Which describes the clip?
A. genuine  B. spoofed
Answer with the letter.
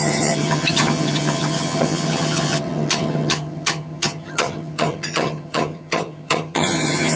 B